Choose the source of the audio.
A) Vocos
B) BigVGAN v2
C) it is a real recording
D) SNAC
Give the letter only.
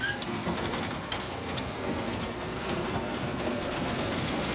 D